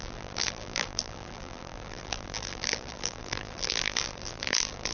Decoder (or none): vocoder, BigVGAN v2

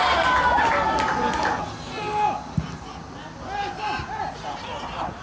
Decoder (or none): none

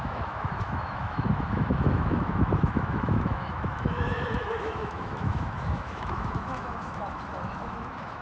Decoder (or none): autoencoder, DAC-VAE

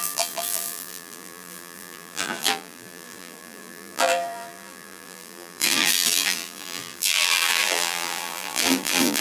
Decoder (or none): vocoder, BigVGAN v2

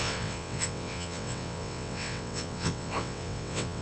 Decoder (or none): vocoder, WaveNeXt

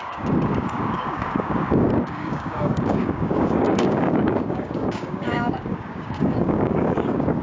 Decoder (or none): codec, DAC